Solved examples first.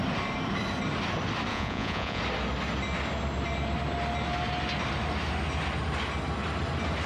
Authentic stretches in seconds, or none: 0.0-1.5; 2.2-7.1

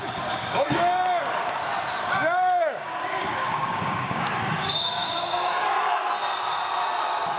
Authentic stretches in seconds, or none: 1.6-2.0; 6.1-7.4

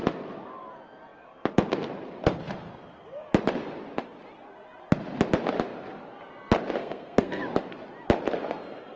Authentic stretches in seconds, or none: 0.0-6.8; 7.4-9.0